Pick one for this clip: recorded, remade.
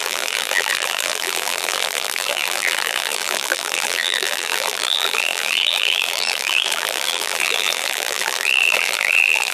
remade